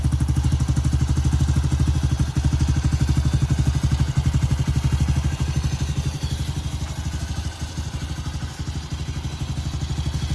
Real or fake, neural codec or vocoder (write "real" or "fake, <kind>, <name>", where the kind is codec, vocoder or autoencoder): real